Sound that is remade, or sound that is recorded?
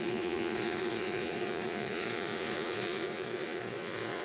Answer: remade